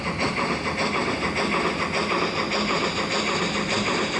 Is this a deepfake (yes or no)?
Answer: no